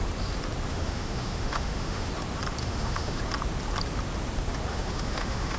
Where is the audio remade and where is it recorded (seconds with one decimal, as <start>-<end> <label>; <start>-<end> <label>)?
0.0-0.7 recorded; 0.7-2.1 remade; 2.1-2.6 recorded; 2.6-3.2 remade; 3.2-4.7 recorded; 4.7-5.6 remade